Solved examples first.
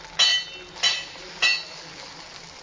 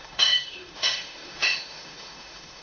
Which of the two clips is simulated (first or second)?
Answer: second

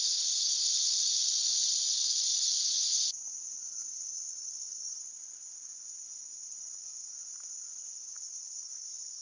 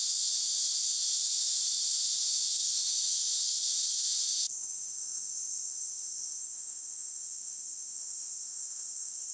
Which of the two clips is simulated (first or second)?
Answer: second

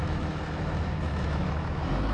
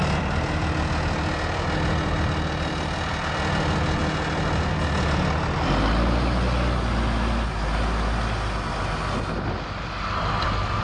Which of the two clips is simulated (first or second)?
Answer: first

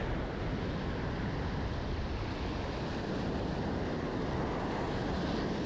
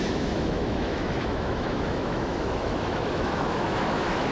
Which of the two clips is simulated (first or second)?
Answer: second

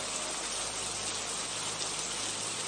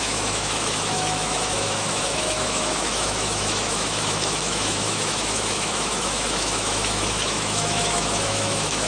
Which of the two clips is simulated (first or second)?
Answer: second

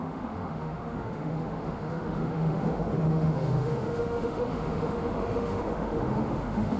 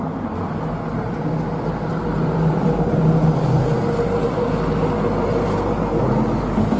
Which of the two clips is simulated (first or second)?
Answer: first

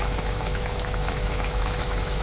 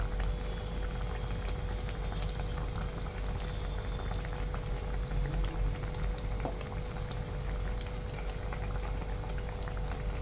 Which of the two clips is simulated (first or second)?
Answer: first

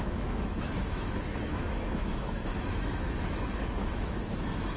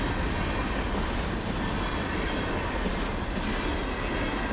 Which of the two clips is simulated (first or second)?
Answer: first